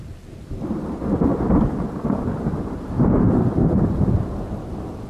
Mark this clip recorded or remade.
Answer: remade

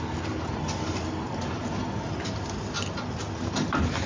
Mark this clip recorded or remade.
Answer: recorded